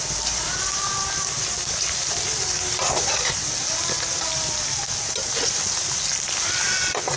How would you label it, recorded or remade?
recorded